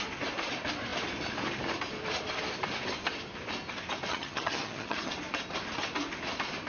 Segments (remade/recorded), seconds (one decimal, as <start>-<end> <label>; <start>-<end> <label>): 0.0-4.1 recorded; 4.1-5.1 remade; 5.1-6.7 recorded